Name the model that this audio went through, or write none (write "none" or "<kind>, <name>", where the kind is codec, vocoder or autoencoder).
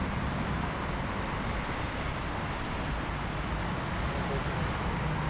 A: none